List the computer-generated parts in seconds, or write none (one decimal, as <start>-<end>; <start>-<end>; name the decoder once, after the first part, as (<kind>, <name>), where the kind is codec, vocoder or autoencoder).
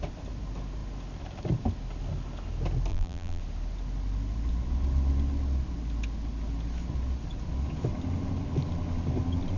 2.9-3.4 (vocoder, BigVGAN v2)